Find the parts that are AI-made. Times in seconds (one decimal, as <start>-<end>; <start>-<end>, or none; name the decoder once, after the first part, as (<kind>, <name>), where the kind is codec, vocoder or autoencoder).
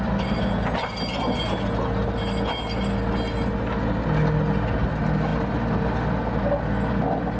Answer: none